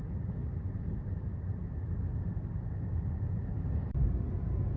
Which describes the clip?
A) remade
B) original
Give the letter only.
B